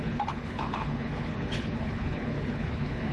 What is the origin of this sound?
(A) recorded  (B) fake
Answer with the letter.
B